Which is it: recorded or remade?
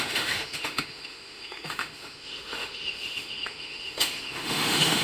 remade